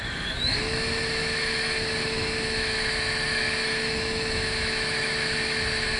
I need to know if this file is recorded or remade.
remade